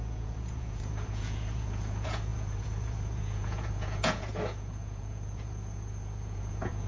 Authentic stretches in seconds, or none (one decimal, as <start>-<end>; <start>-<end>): none